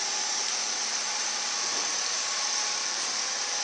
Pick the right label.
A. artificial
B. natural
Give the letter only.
A